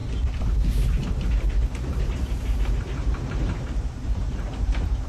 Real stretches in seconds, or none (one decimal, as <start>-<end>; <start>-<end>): 0.0-2.0